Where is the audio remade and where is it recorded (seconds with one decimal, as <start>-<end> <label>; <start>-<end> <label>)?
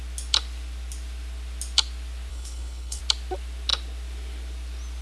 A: 0.0-2.3 recorded; 2.3-3.0 remade; 3.0-5.0 recorded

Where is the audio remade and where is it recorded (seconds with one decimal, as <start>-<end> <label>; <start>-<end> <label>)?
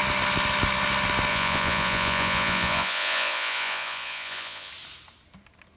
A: 0.0-1.3 recorded; 1.3-4.7 remade; 4.7-5.8 recorded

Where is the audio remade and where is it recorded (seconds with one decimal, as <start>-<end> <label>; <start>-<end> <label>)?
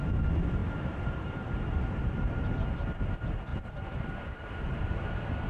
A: 0.0-0.6 recorded; 0.6-2.5 remade; 2.5-3.5 recorded; 3.5-5.1 remade; 5.1-5.5 recorded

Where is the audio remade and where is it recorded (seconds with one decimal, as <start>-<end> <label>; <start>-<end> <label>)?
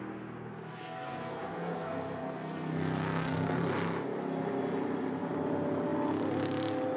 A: 0.0-0.7 recorded; 0.7-3.6 remade; 3.6-7.0 recorded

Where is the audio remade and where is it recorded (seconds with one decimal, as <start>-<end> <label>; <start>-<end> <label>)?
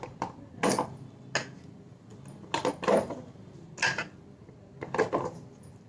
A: 0.0-5.9 recorded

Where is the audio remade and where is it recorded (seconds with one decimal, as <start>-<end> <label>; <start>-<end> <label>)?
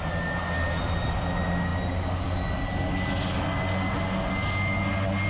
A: 0.0-5.3 recorded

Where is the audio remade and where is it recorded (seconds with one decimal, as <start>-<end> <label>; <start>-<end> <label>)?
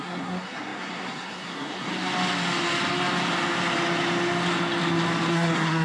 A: 0.0-1.9 remade; 1.9-5.3 recorded; 5.3-5.8 remade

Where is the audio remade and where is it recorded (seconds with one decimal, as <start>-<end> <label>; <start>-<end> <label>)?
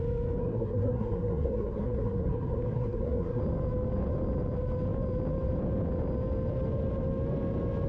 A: 0.0-0.4 recorded; 0.4-3.4 remade; 3.4-7.9 recorded